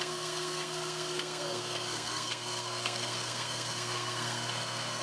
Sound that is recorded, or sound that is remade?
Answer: remade